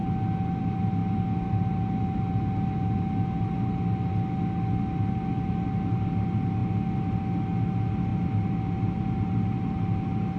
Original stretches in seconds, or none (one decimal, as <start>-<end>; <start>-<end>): 0.0-10.4

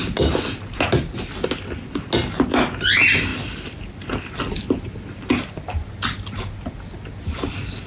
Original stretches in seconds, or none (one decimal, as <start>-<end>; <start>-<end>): 0.0-7.9

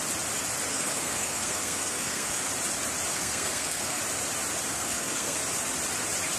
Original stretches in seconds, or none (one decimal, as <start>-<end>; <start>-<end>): 0.0-0.7; 2.5-3.1; 4.0-4.7; 5.4-6.4

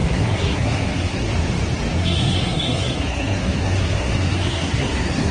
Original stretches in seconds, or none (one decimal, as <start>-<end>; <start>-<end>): 1.3-2.0